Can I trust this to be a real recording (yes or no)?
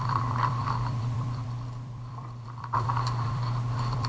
no